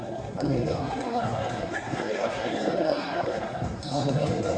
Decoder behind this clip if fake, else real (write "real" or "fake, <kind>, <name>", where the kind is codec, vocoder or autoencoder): fake, codec, SNAC